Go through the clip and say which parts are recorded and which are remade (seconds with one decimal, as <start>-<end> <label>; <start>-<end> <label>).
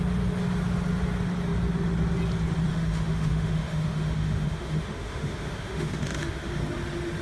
0.0-2.7 recorded; 2.7-6.6 remade; 6.6-7.2 recorded